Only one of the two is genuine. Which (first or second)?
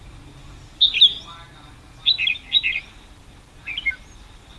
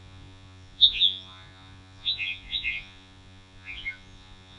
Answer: first